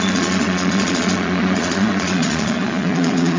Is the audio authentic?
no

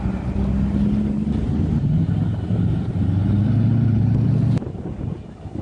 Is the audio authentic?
yes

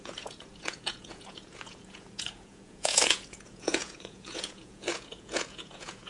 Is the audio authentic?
no